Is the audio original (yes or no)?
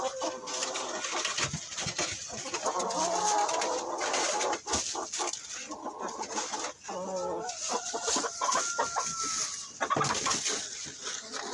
yes